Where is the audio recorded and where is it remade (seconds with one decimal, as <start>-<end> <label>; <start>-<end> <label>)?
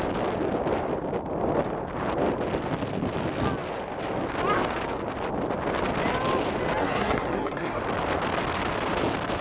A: 0.0-6.8 recorded; 6.8-7.8 remade; 7.8-9.4 recorded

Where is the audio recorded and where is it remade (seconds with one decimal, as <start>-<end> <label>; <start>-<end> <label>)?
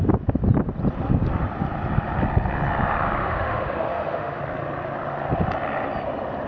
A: 0.0-3.2 recorded; 3.2-4.4 remade; 4.4-6.5 recorded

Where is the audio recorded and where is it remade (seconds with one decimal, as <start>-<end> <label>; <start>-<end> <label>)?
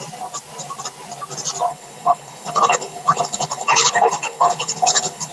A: 0.0-1.7 recorded; 1.7-5.3 remade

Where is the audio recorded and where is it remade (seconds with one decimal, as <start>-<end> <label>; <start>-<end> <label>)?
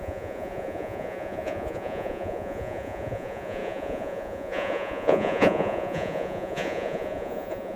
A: 0.0-7.8 remade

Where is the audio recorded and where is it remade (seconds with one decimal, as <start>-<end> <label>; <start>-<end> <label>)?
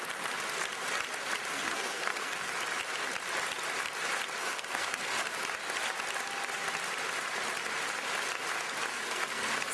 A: 0.0-1.5 recorded; 1.5-2.5 remade; 2.5-4.4 recorded; 4.4-5.2 remade; 5.2-8.9 recorded; 8.9-9.7 remade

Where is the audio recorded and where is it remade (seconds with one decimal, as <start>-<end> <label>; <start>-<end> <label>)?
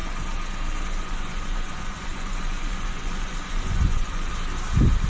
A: 0.0-1.0 recorded; 1.0-4.3 remade; 4.3-5.1 recorded